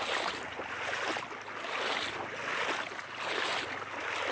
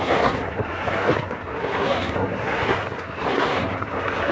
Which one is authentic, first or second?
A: first